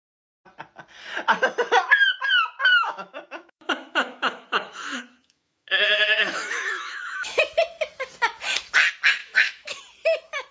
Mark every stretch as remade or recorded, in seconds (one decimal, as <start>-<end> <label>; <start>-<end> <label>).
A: 0.0-2.6 recorded; 2.6-7.4 remade; 7.4-9.2 recorded; 9.2-9.8 remade; 9.8-10.5 recorded